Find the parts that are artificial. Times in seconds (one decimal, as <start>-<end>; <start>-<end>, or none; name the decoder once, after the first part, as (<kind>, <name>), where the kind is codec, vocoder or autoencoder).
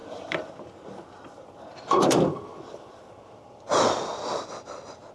0.0-3.1 (vocoder, BigVGAN v2)